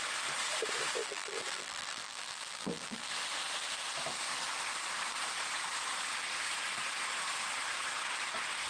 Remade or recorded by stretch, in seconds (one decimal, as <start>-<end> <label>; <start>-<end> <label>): 0.0-1.0 recorded; 1.0-3.1 remade; 3.1-8.7 recorded